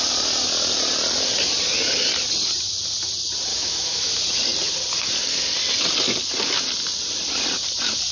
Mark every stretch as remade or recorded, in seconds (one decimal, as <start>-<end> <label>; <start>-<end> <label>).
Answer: 0.0-3.5 recorded; 3.5-4.1 remade; 4.1-8.1 recorded